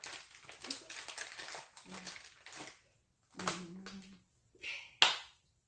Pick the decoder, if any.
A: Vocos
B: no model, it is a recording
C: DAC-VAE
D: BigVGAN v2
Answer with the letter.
B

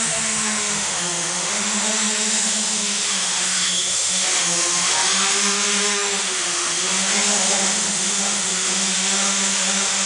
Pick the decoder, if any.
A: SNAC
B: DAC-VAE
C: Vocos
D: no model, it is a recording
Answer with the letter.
B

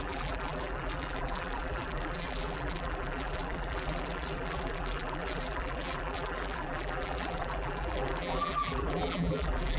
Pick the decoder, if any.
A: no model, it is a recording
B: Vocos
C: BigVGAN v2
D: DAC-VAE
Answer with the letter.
C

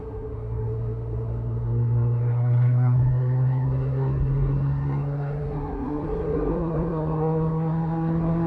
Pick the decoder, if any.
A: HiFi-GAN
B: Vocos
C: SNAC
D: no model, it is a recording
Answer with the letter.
C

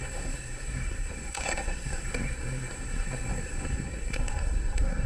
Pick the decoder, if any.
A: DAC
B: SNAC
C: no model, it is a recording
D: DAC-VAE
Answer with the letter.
B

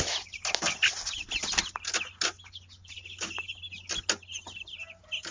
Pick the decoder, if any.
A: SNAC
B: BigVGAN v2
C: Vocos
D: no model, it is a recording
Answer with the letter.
D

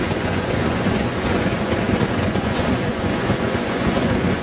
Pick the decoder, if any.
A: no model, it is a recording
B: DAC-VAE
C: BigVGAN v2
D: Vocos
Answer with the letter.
D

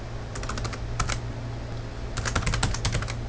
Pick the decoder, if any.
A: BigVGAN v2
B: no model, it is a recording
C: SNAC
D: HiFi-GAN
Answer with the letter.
B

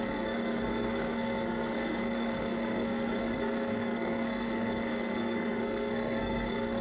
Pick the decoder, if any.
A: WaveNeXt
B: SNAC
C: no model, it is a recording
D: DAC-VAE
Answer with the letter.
B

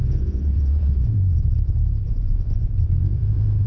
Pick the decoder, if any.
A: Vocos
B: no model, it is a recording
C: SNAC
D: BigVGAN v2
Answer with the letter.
A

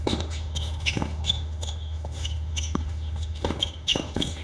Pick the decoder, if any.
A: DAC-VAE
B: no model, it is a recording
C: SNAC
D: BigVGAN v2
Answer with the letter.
A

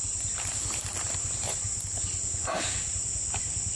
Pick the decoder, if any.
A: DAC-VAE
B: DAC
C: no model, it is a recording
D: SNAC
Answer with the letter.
C